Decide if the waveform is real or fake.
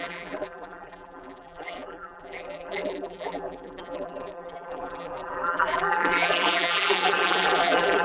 fake